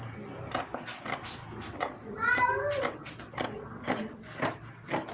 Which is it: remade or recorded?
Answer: recorded